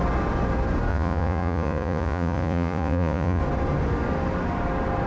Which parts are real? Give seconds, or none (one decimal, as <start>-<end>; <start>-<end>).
0.0-0.9; 3.4-5.1